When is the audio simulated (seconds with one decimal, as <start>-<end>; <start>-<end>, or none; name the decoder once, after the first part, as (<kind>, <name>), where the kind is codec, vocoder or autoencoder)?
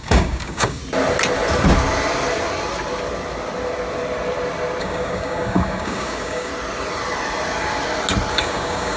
0.0-0.8 (codec, DAC); 4.8-6.5; 8.3-9.0